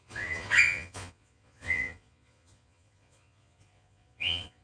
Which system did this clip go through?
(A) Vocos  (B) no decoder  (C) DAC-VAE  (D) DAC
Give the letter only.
A